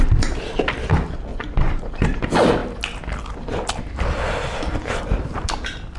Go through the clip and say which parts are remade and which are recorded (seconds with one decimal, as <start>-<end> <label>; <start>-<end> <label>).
0.0-1.3 recorded; 1.3-1.9 remade; 1.9-6.0 recorded